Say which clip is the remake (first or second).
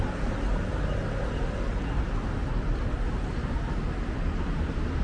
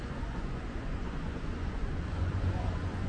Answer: second